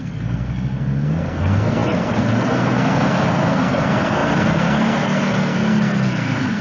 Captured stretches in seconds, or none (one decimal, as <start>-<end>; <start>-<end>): none